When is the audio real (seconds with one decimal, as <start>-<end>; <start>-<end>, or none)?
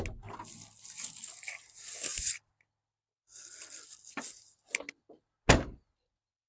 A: 0.0-6.5